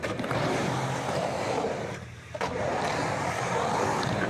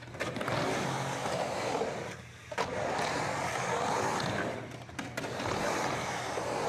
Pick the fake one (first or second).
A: first